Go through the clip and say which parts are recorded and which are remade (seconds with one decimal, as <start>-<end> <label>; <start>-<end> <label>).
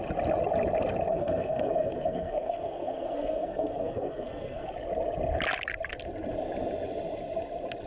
0.0-1.1 recorded; 1.1-4.7 remade; 4.7-7.9 recorded